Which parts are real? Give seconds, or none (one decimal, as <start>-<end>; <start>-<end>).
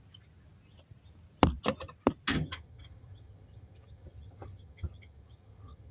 0.0-2.3